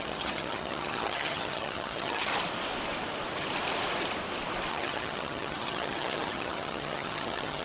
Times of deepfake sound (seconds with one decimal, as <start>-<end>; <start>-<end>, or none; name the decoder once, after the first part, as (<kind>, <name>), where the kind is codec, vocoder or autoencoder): 0.0-2.3 (vocoder, HiFi-GAN); 4.7-7.6